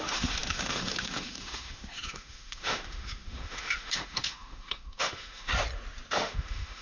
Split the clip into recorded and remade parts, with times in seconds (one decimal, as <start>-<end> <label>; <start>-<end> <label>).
0.0-5.5 remade; 5.5-6.1 recorded; 6.1-6.8 remade